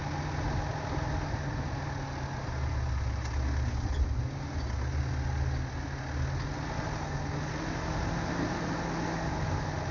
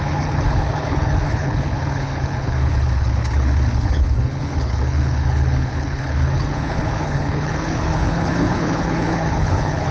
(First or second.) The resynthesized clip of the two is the second